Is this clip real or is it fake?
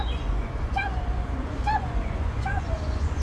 fake